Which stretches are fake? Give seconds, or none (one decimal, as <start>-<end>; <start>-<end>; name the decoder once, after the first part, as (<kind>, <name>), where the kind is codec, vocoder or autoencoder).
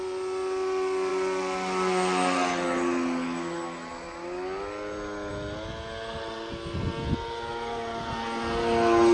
none